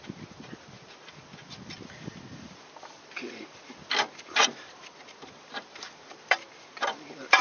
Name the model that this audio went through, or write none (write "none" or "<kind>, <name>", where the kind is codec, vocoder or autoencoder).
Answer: vocoder, BigVGAN v2